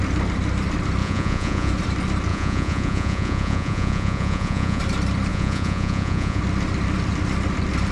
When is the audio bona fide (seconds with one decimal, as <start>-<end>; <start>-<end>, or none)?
0.0-1.0; 1.7-2.3; 4.8-5.3; 6.4-7.9